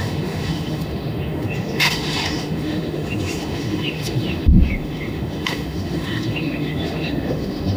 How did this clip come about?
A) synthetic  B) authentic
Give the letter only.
A